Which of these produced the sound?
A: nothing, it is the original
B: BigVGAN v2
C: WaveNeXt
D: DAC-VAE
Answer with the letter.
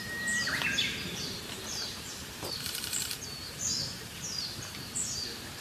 B